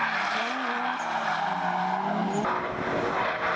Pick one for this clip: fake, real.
real